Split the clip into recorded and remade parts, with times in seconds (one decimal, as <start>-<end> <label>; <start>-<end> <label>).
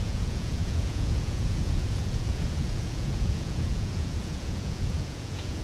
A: 0.0-5.6 remade